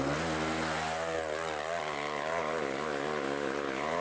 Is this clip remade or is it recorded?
recorded